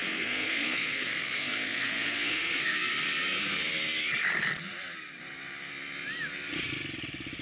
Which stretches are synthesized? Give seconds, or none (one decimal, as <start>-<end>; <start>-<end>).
0.0-2.9